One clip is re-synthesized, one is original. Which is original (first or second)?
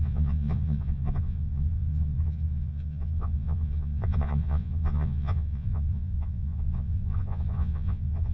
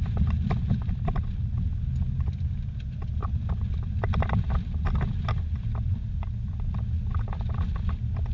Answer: second